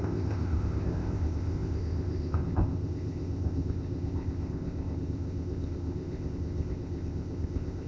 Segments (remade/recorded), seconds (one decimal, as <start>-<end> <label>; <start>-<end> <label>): 0.0-7.9 remade